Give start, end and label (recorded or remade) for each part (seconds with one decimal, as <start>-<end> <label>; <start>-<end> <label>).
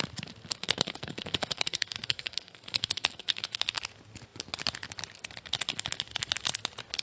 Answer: 0.0-0.5 recorded; 0.5-3.8 remade; 3.8-7.0 recorded